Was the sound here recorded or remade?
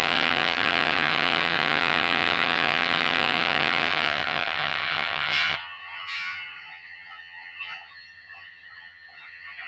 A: remade